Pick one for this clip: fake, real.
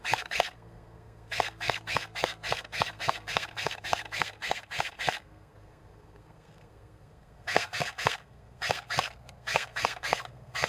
fake